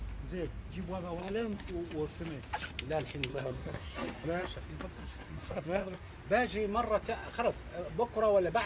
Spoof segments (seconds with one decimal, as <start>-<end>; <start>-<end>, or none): 1.2-1.7; 3.3-3.9; 5.0-6.1

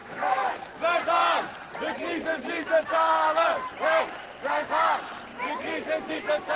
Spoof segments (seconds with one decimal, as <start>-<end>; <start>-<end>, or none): 0.0-0.6